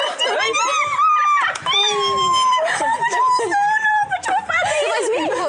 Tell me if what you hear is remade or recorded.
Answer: remade